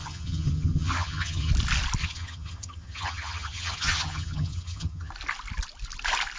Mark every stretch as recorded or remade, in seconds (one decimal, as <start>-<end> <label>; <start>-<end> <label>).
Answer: 0.0-1.5 remade; 1.5-2.0 recorded; 2.0-5.1 remade; 5.1-6.4 recorded